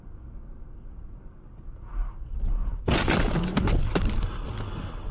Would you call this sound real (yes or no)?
yes